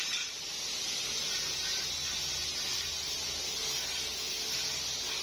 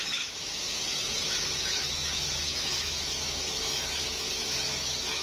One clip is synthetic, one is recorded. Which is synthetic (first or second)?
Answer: second